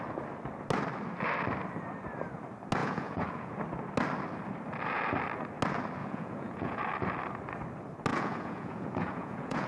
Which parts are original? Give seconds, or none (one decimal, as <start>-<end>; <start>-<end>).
0.0-2.8; 3.6-6.0; 6.8-8.1